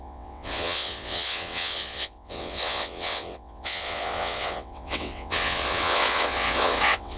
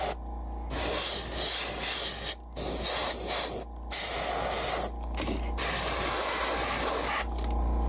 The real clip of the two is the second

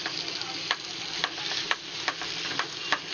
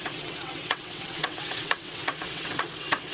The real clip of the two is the first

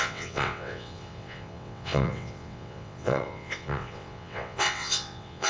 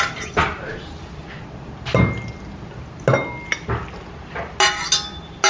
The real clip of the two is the second